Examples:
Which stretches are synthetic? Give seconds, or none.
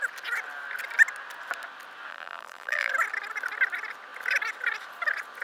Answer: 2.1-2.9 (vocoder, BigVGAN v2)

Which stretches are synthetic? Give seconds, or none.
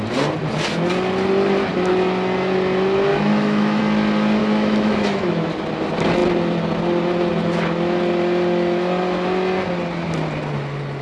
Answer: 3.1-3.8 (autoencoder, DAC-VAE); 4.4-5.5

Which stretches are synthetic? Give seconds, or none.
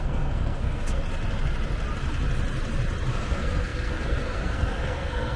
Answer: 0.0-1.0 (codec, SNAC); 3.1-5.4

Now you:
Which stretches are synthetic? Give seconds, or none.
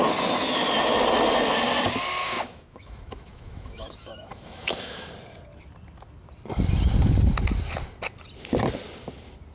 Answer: 2.2-5.1 (autoencoder, DAC-VAE)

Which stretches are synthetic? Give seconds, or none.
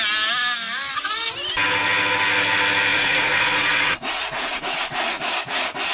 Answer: 2.9-5.2 (vocoder, Vocos)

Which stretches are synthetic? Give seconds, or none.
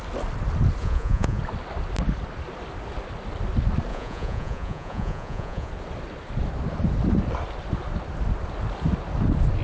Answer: 0.8-1.4 (vocoder, Vocos); 3.9-5.7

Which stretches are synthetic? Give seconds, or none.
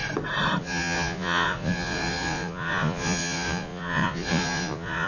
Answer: 0.6-5.1 (vocoder, Vocos)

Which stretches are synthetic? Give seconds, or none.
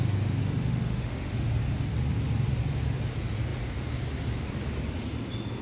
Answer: 0.4-1.5 (autoencoder, DAC-VAE)